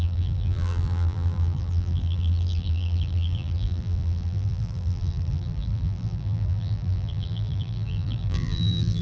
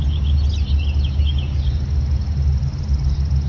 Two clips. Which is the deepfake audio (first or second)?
first